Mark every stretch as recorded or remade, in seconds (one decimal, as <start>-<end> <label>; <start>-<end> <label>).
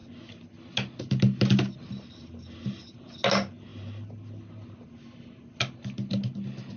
0.0-6.8 recorded